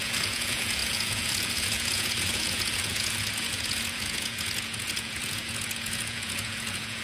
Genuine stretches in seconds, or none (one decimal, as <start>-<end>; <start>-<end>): none